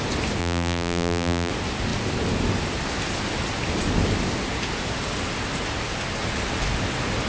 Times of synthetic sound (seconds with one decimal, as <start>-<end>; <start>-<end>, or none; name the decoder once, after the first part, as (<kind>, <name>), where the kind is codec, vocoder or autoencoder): 0.4-1.5 (vocoder, BigVGAN v2)